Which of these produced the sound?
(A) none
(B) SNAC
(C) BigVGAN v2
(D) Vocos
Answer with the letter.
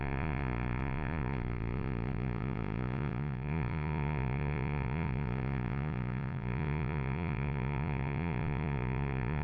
D